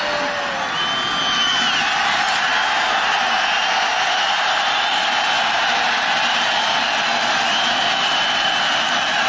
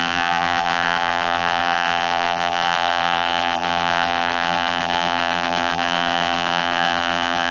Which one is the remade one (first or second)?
second